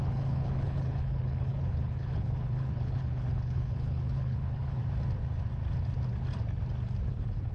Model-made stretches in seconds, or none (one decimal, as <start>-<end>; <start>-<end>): 0.0-4.8; 7.1-7.5